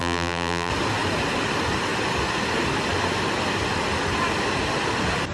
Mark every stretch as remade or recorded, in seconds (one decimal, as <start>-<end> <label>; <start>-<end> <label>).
0.0-0.7 remade; 0.7-5.3 recorded